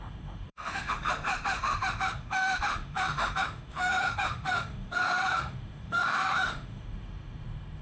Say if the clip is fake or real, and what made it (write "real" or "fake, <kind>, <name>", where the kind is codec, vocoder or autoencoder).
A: fake, autoencoder, DAC-VAE